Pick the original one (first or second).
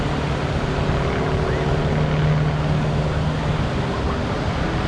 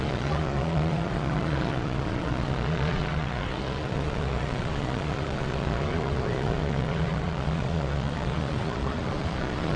first